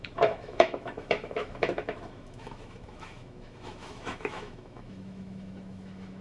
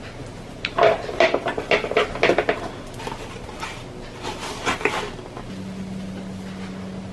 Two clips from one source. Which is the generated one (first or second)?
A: first